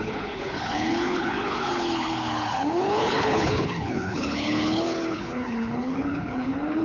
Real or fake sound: fake